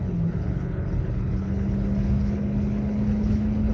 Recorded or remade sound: remade